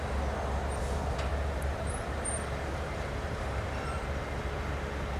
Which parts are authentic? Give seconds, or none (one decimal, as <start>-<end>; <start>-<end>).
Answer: 0.0-1.3; 4.4-5.2